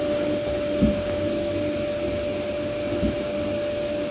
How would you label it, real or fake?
real